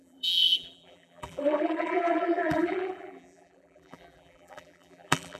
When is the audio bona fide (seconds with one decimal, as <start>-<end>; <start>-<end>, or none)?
none